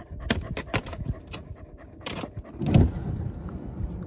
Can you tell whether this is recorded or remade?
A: recorded